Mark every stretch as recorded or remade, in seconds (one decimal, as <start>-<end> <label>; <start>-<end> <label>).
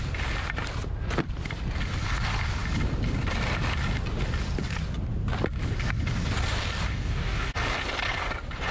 0.0-6.9 recorded; 6.9-7.5 remade; 7.5-8.7 recorded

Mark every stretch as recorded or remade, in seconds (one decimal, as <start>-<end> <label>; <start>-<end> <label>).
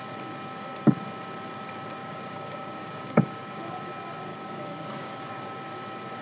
0.0-2.0 recorded; 2.0-3.6 remade; 3.6-4.3 recorded; 4.3-5.3 remade; 5.3-6.2 recorded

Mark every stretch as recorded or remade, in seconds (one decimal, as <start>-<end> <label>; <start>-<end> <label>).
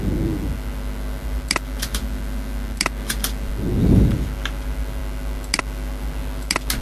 0.0-6.8 recorded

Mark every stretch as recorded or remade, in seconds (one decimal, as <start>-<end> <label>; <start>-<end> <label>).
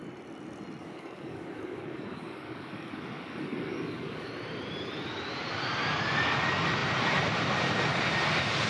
0.0-0.8 recorded; 0.8-4.3 remade; 4.3-8.7 recorded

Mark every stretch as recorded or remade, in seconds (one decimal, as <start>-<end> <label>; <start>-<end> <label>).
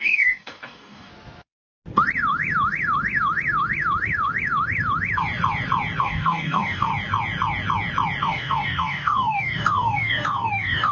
0.0-1.1 remade; 1.1-6.0 recorded; 6.0-6.9 remade; 6.9-8.2 recorded; 8.2-10.9 remade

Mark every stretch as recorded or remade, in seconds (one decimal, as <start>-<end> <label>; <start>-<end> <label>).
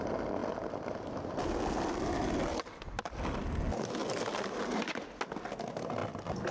0.0-6.5 recorded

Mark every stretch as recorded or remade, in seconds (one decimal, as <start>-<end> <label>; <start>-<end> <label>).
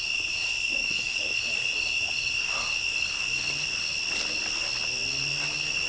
0.0-0.8 recorded; 0.8-1.4 remade; 1.4-5.9 recorded